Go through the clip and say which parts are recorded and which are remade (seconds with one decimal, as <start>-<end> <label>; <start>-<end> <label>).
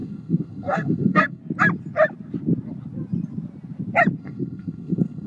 0.0-1.4 remade; 1.4-4.2 recorded; 4.2-5.3 remade